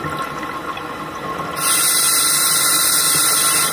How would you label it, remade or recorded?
recorded